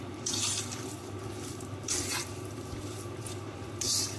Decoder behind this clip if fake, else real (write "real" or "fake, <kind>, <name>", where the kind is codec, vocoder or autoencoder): fake, vocoder, BigVGAN v2